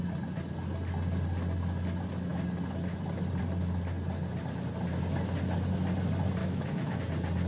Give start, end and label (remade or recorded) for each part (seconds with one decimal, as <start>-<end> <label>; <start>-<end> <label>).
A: 0.0-6.4 recorded; 6.4-7.0 remade; 7.0-7.5 recorded